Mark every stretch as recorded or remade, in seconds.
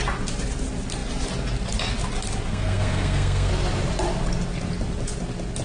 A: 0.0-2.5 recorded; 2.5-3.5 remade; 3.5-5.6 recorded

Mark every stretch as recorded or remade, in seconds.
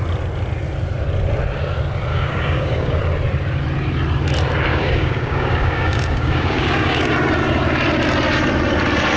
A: 0.0-2.1 recorded; 2.1-3.0 remade; 3.0-4.7 recorded; 4.7-7.1 remade; 7.1-9.2 recorded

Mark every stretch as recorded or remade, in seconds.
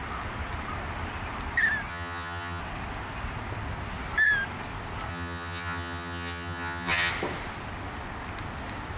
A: 0.0-1.9 recorded; 1.9-2.6 remade; 2.6-5.1 recorded; 5.1-7.1 remade; 7.1-9.0 recorded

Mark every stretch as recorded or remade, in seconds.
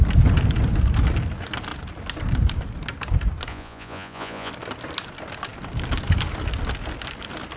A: 0.0-3.5 recorded; 3.5-4.5 remade; 4.5-7.6 recorded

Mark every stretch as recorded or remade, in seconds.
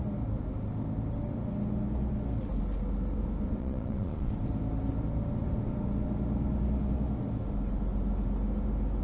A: 0.0-3.6 recorded; 3.6-4.3 remade; 4.3-9.0 recorded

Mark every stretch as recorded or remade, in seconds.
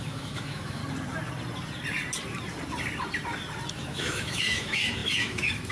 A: 0.0-0.8 remade; 0.8-3.7 recorded; 3.7-5.7 remade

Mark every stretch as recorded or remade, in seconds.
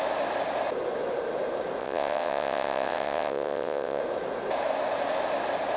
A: 0.0-1.8 recorded; 1.8-4.0 remade; 4.0-5.8 recorded